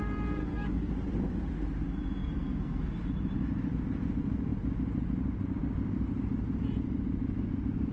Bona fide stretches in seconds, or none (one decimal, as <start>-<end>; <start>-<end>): 0.0-0.4; 0.9-2.2; 2.8-7.9